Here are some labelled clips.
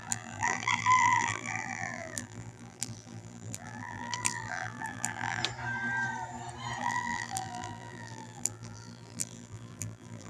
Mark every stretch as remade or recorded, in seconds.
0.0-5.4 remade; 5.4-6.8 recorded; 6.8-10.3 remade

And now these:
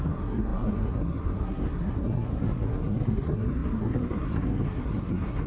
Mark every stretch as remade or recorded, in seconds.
0.0-5.5 remade

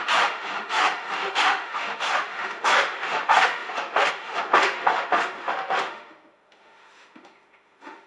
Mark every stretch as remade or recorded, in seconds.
0.0-8.1 remade

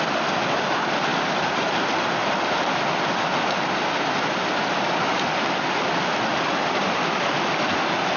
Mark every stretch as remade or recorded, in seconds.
0.0-8.2 recorded

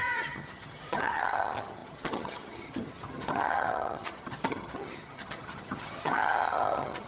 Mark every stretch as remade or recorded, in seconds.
0.0-7.1 remade

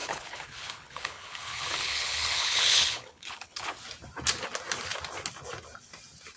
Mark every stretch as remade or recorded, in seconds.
0.0-3.8 remade; 3.8-6.4 recorded

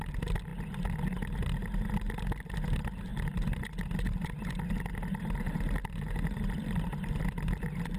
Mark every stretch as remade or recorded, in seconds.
0.0-8.0 recorded

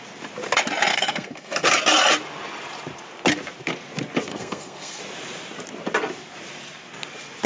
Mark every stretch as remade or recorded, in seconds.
0.0-0.9 recorded; 0.9-1.7 remade; 1.7-4.3 recorded; 4.3-5.0 remade; 5.0-7.5 recorded